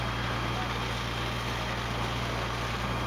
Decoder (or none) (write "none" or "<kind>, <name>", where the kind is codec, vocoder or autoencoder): none